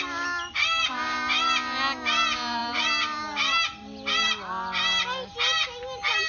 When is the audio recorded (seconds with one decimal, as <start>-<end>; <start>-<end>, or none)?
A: 0.0-6.3